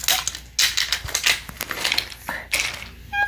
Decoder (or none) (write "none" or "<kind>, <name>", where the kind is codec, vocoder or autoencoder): none